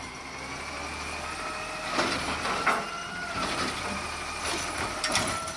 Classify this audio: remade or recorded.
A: recorded